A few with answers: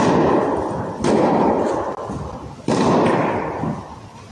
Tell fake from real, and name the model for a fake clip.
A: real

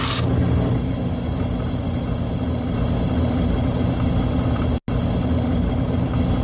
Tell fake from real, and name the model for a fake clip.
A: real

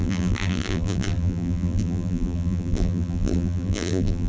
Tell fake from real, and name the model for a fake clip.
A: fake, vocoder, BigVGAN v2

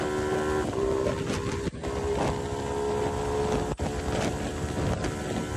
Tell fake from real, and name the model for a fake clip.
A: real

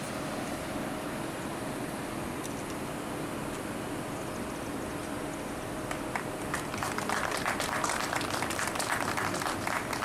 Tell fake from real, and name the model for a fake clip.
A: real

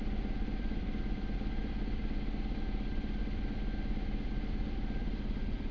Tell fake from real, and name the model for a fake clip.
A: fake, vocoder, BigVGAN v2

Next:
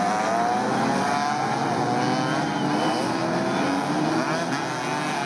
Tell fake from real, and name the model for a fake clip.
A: real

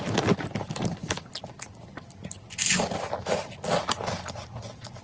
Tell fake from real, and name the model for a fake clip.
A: real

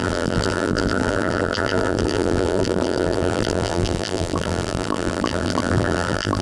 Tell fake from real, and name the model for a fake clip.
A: fake, vocoder, BigVGAN v2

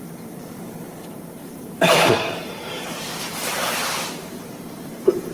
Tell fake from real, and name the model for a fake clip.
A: fake, vocoder, BigVGAN v2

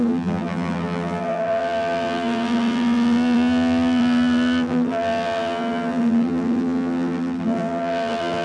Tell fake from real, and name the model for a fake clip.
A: fake, vocoder, BigVGAN v2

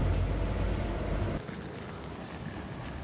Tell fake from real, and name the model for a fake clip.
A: real